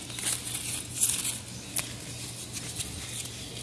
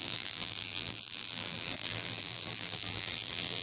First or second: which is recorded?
first